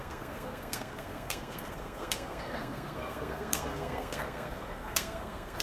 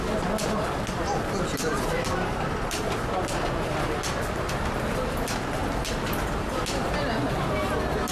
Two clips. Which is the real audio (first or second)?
second